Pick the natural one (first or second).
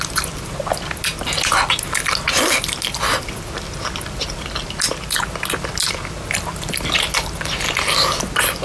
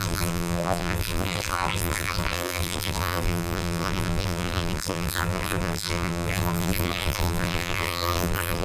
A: first